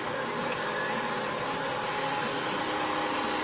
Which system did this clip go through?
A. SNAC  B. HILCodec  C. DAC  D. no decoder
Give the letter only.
D